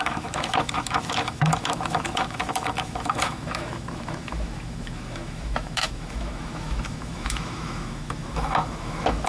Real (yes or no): no